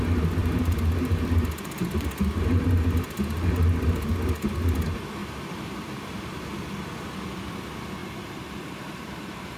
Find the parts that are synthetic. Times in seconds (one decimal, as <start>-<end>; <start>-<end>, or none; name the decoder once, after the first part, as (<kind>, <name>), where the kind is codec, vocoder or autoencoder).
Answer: 0.4-3.5 (vocoder, BigVGAN v2); 5.2-6.5; 8.0-9.6